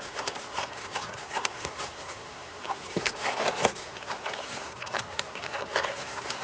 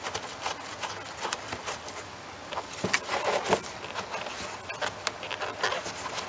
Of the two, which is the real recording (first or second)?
second